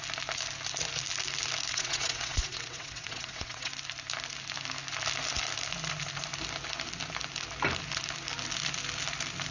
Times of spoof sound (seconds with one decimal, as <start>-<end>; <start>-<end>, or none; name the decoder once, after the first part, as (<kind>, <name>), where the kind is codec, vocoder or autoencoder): 1.7-3.7 (vocoder, WaveNeXt)